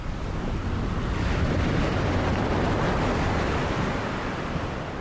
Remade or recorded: recorded